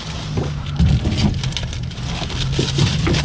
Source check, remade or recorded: recorded